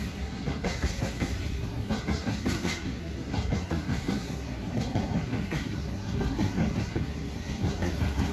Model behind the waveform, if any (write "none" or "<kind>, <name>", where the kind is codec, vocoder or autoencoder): codec, SNAC